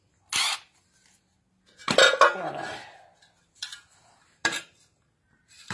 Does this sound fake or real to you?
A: real